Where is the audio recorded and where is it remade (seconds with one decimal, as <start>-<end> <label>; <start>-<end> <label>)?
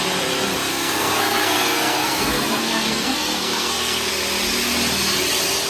0.0-0.7 recorded; 0.7-4.1 remade; 4.1-5.7 recorded